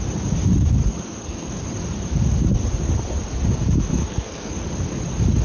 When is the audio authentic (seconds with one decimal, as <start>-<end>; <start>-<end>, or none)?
0.0-0.8; 1.5-3.9; 4.5-5.4